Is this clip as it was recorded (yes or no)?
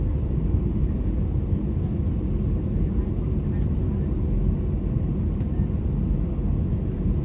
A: yes